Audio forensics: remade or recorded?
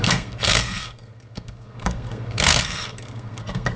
remade